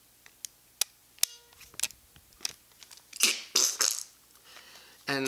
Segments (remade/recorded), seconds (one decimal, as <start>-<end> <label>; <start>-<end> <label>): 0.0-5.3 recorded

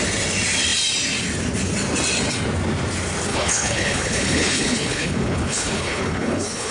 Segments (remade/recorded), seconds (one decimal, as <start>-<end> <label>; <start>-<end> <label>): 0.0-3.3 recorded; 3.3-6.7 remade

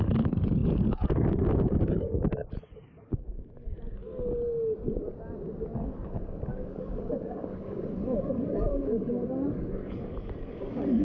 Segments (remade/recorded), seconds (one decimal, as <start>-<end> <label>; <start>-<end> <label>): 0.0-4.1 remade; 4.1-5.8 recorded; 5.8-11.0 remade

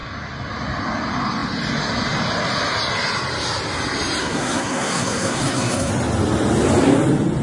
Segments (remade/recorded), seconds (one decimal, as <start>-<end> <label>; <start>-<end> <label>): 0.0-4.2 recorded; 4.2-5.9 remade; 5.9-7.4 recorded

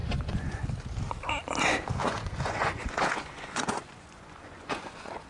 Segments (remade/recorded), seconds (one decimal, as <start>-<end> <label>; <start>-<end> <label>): 0.0-0.6 remade; 0.6-2.0 recorded; 2.0-5.3 remade

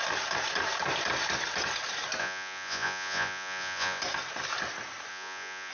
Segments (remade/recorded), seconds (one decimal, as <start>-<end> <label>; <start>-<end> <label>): 0.0-2.2 recorded; 2.2-4.0 remade; 4.0-5.1 recorded; 5.1-5.7 remade

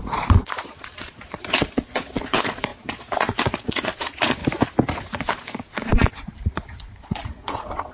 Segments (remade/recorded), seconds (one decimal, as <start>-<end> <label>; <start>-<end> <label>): 0.0-4.4 remade; 4.4-5.0 recorded; 5.0-7.9 remade